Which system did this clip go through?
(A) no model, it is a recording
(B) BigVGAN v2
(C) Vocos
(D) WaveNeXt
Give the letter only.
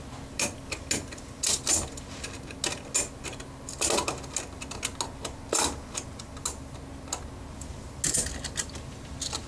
A